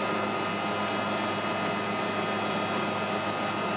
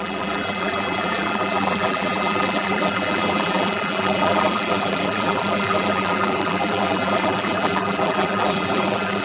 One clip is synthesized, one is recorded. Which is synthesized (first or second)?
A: second